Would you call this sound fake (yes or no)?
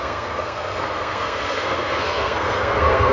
yes